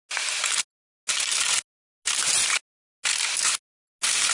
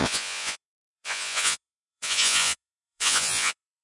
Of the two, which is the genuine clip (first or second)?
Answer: first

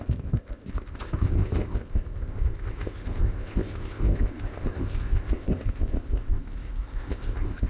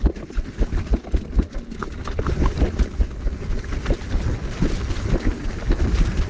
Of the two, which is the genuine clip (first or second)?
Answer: second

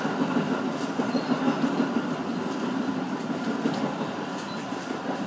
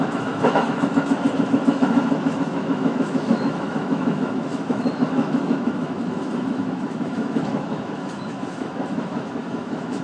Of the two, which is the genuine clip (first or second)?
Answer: first